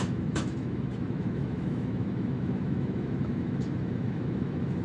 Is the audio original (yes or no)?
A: no